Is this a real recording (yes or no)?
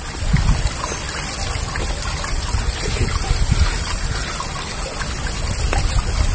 yes